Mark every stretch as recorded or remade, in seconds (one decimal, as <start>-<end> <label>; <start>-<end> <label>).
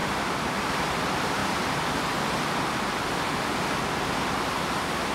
0.0-0.8 remade; 0.8-5.1 recorded